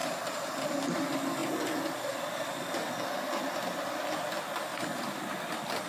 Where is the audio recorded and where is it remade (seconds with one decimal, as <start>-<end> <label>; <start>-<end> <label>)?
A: 0.0-0.7 remade; 0.7-5.9 recorded